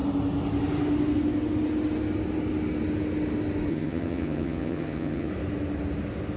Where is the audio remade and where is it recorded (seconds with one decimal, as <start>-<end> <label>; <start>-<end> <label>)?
0.0-3.7 recorded; 3.7-5.3 remade; 5.3-6.4 recorded